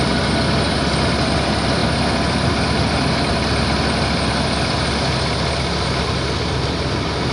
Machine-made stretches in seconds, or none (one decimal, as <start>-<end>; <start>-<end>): none